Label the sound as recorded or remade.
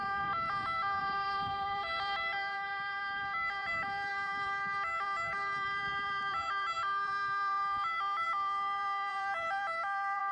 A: remade